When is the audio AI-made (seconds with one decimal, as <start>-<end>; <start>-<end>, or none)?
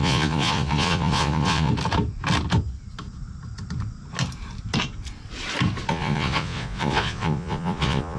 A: 0.0-1.7; 5.9-8.2